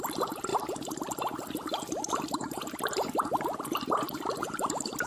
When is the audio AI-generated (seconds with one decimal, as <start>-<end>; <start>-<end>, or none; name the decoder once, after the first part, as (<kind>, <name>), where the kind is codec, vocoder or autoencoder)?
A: none